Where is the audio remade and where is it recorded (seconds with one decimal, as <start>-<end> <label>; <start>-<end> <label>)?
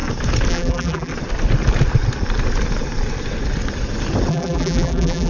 0.0-0.5 recorded; 0.5-1.1 remade; 1.1-4.3 recorded; 4.3-5.3 remade